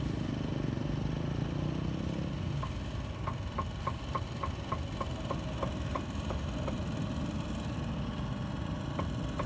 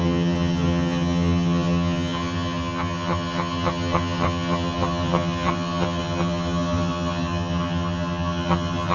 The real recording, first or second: first